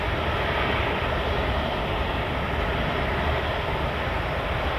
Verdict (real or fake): real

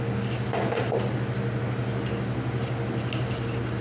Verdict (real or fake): real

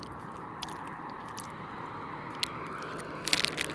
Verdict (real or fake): real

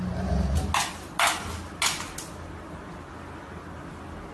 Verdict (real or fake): real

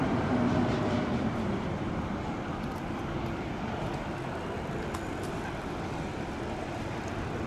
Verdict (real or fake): fake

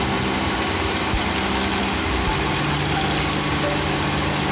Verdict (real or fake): real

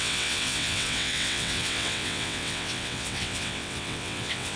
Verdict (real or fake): fake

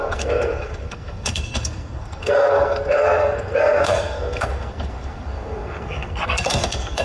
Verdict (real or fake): fake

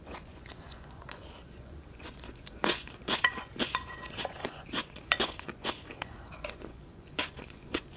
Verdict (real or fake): fake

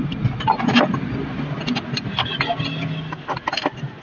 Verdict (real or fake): real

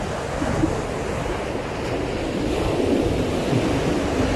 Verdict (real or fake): real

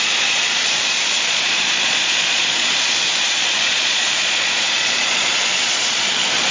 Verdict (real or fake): fake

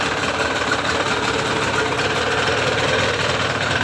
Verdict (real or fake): real